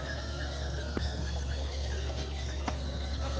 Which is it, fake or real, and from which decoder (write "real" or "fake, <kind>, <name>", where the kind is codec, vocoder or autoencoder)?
fake, codec, SNAC